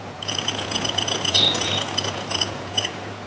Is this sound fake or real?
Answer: fake